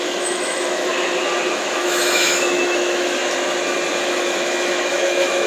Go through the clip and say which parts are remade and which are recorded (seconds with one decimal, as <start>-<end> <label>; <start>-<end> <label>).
0.0-0.9 remade; 0.9-1.5 recorded; 1.5-3.2 remade; 3.2-3.9 recorded; 3.9-5.5 remade